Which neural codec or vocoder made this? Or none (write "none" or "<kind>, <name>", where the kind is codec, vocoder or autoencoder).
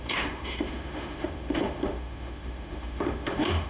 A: autoencoder, DAC-VAE